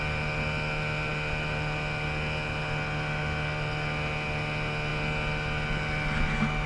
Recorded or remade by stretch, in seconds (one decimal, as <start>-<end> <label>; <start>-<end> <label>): 0.0-6.7 recorded